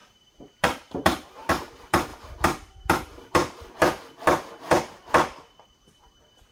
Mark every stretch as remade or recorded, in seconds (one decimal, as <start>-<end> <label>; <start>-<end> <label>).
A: 0.0-1.5 remade; 1.5-2.1 recorded; 2.1-5.1 remade; 5.1-6.5 recorded